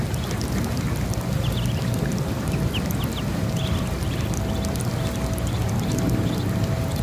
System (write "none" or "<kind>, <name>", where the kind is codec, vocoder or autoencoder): none